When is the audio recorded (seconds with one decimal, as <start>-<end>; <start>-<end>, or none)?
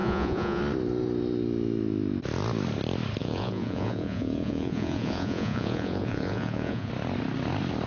0.6-3.2; 6.9-7.9